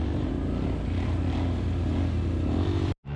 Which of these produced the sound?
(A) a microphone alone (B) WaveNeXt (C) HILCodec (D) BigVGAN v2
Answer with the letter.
A